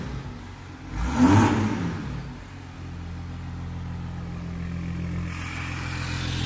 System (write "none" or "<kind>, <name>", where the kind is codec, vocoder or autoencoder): none